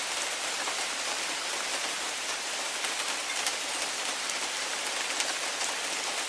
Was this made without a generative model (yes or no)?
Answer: yes